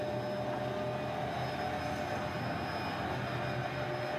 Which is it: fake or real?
real